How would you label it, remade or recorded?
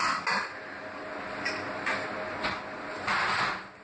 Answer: recorded